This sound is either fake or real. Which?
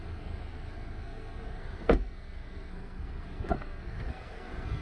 fake